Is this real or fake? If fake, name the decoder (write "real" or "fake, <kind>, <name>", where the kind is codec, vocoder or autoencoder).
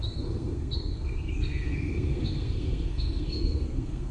fake, codec, SNAC